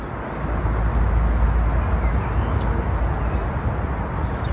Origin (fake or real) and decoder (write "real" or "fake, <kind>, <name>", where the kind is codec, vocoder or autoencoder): real